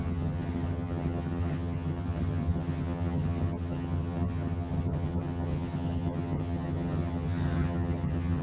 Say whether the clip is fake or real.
fake